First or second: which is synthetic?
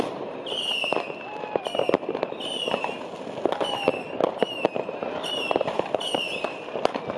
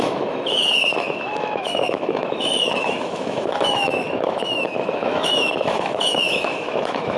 second